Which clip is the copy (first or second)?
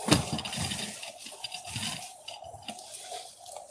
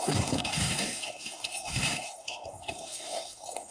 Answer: second